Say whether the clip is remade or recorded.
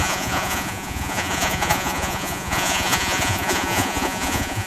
remade